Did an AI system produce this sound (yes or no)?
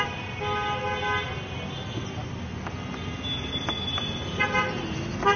no